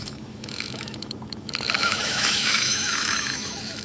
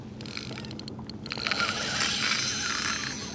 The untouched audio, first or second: second